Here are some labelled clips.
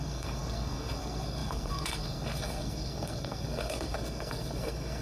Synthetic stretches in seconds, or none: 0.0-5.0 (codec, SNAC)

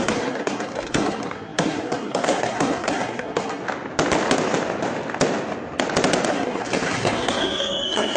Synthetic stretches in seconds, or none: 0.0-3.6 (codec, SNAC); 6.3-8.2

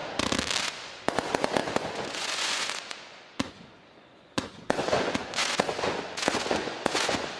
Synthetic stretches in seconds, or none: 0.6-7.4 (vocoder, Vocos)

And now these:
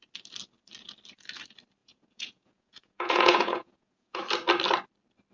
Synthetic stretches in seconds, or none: 1.8-4.2 (vocoder, Vocos)

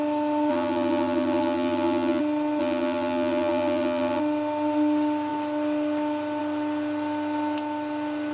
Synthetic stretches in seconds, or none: 0.5-2.2 (vocoder, BigVGAN v2); 2.6-4.2

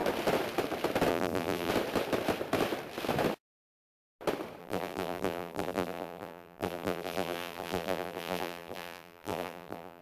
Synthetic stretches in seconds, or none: 1.1-1.7 (vocoder, BigVGAN v2); 4.6-10.0

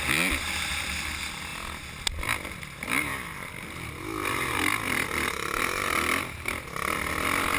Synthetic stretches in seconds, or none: none

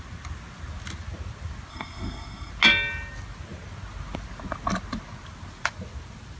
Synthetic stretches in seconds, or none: 1.7-2.5 (codec, SNAC)